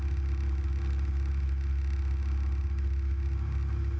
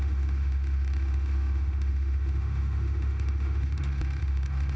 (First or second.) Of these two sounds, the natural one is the first